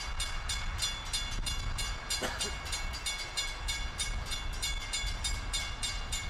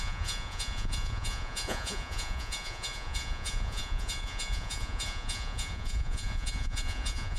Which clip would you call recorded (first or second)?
first